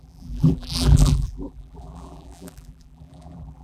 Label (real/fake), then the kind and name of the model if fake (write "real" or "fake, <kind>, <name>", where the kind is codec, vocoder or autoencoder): fake, vocoder, BigVGAN v2